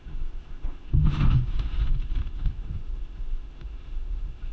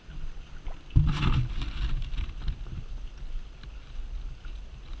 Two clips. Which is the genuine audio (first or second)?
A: second